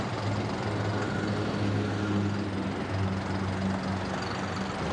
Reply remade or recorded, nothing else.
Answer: recorded